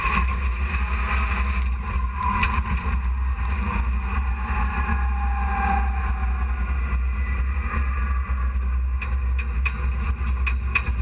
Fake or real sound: real